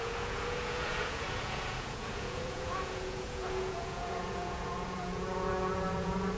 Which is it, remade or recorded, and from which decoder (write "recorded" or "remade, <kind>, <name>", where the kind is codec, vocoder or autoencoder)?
remade, vocoder, Vocos